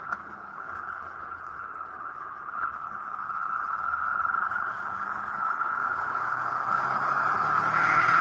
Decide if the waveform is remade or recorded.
remade